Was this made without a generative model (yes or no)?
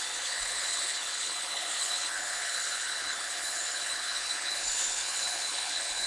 no